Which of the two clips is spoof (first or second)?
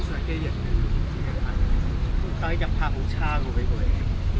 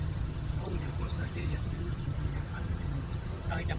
second